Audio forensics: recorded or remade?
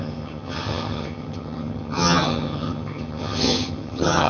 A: remade